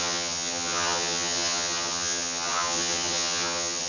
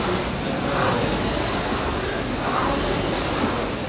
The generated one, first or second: first